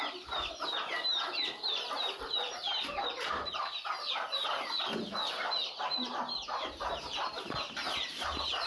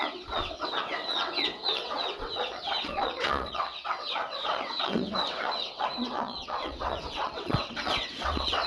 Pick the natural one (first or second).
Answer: first